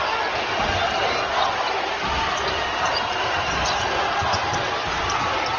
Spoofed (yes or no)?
no